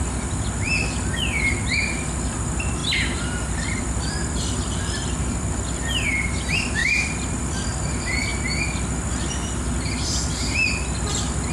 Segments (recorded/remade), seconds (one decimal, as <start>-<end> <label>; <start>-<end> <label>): 0.0-8.3 remade; 8.3-9.1 recorded; 9.1-11.5 remade